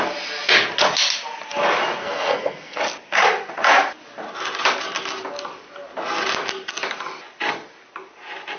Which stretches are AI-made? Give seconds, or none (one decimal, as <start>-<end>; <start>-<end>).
2.0-2.8